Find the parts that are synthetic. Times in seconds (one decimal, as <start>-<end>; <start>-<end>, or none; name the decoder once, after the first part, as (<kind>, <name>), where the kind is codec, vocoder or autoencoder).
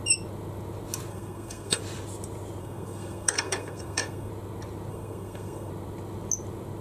1.1-1.8 (codec, SNAC); 2.6-4.3; 4.9-5.7